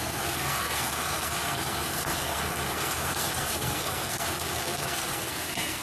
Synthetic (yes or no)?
yes